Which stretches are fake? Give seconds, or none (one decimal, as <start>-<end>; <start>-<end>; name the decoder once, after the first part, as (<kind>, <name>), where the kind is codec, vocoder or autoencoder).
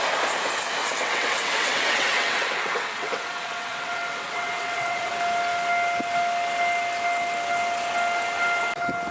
0.8-5.1 (vocoder, WaveNeXt)